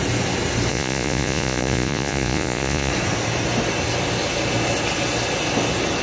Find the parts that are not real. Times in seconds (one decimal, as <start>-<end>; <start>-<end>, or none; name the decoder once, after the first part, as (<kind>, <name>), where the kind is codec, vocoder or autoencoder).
0.7-2.9 (vocoder, Vocos)